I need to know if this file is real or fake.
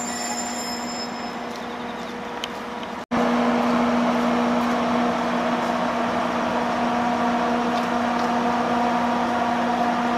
real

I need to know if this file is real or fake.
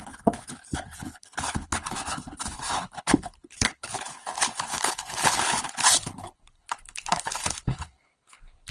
fake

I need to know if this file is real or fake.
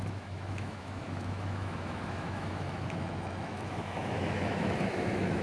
fake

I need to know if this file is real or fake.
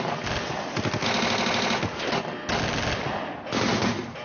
real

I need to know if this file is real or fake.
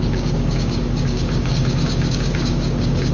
fake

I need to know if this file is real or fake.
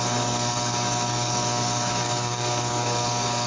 fake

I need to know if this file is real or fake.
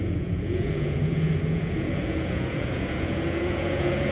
fake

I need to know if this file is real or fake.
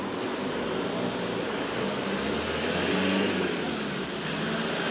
real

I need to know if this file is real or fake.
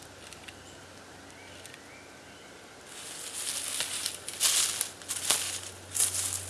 real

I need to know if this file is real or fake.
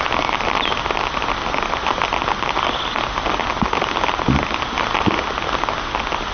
real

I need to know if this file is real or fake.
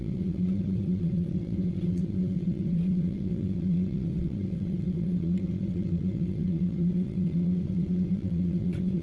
fake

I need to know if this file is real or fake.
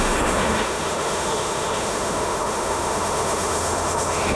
fake